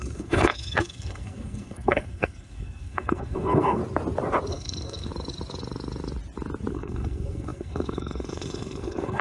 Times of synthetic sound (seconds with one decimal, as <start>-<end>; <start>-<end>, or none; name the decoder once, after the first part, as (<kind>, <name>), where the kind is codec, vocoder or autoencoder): 0.0-3.8 (codec, SNAC); 4.5-5.1; 6.7-9.2